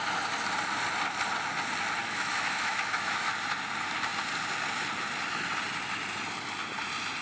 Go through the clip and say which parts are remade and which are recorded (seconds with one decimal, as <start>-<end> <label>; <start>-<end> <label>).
0.0-2.0 recorded; 2.0-3.3 remade; 3.3-7.2 recorded